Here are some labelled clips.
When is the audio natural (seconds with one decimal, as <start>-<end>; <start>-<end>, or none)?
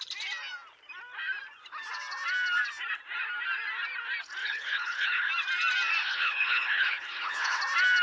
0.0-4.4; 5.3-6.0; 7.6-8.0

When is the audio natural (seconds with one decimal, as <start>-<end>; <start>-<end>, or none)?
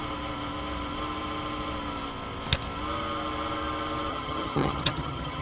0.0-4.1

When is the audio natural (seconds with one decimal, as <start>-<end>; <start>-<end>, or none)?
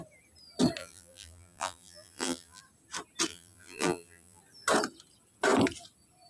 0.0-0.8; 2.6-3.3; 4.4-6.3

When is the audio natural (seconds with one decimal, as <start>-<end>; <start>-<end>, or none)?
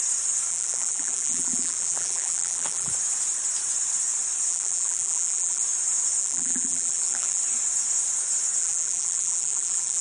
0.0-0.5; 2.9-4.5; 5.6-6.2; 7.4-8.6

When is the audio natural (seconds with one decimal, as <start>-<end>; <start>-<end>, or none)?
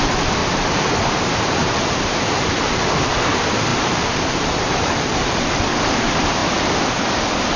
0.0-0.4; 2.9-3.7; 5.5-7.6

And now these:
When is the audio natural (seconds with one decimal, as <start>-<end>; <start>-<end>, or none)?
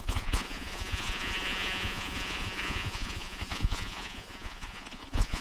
none